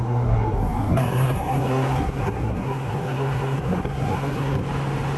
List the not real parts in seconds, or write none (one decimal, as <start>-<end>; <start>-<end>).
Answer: 0.0-4.6